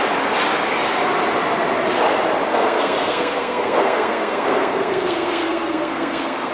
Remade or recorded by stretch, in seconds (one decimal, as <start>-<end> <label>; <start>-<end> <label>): 0.0-2.5 recorded; 2.5-6.5 remade